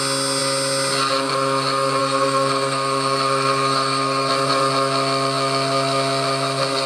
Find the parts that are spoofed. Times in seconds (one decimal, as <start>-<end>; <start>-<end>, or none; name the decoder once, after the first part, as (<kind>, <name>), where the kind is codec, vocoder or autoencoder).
2.0-4.3 (codec, SNAC)